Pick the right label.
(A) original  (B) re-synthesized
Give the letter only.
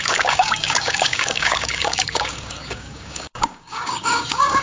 B